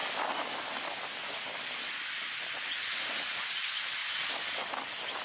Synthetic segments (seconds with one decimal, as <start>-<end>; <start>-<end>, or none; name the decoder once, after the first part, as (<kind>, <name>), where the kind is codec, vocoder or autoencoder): none